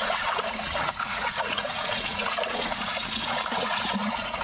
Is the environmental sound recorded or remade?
remade